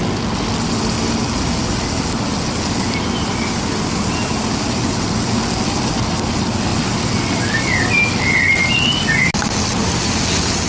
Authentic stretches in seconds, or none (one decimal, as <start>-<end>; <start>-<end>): 0.0-10.7